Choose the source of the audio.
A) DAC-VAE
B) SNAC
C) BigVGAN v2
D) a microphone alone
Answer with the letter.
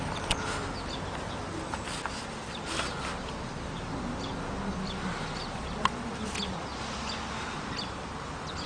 D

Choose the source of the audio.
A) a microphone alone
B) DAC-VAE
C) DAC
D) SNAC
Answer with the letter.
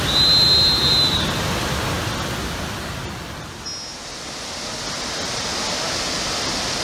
A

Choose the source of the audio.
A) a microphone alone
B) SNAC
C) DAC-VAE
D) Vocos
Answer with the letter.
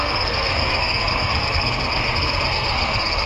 B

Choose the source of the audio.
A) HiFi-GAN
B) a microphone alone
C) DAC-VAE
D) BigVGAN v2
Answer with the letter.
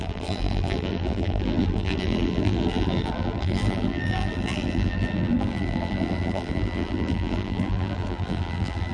D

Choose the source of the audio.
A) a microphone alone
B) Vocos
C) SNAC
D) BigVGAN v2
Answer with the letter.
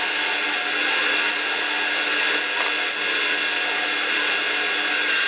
A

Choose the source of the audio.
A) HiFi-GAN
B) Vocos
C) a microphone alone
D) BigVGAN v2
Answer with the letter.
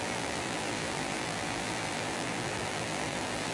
D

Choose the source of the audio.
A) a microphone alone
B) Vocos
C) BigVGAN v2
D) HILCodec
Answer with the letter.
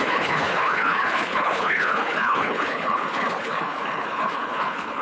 D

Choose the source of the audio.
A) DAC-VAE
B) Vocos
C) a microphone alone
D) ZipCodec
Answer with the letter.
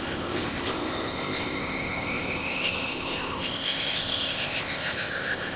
D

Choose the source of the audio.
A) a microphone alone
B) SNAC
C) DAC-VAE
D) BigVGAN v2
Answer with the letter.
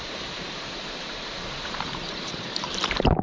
D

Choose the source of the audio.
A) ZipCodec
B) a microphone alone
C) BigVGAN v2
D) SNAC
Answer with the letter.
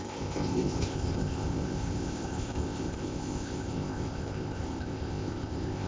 A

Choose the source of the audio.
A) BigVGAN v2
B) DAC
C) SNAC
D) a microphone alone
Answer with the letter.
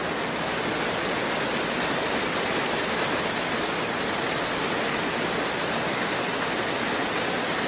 D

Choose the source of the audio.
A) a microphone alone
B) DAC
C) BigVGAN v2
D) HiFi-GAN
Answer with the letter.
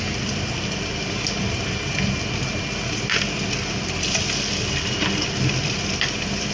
C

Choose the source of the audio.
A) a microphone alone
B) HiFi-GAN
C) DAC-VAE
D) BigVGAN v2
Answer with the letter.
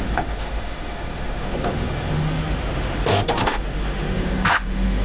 C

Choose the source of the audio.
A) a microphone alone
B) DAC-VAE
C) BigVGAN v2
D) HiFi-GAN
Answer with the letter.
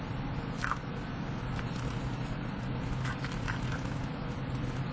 A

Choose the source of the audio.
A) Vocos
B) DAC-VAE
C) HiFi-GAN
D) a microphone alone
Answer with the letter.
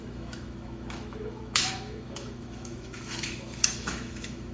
B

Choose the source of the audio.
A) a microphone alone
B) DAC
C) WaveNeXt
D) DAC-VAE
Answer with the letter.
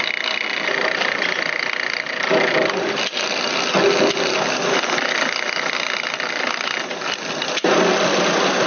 A